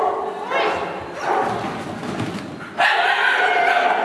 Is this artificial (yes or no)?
no